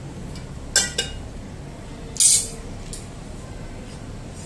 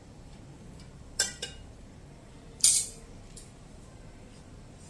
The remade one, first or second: second